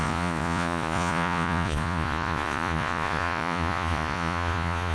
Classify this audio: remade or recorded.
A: remade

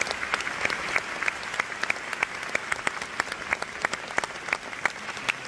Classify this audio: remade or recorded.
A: recorded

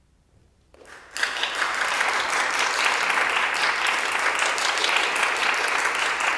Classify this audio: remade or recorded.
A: recorded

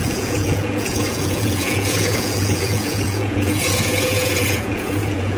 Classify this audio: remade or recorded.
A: remade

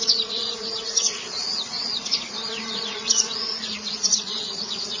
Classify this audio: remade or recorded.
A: remade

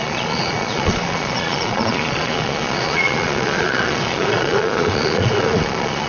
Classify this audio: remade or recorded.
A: remade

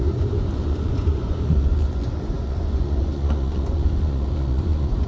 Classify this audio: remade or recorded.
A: remade